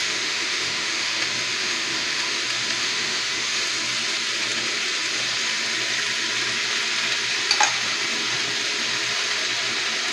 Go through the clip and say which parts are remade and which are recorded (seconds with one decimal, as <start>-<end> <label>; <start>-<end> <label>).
0.0-1.1 remade; 1.1-1.5 recorded; 1.5-2.4 remade; 2.4-2.8 recorded; 2.8-3.6 remade; 3.6-10.1 recorded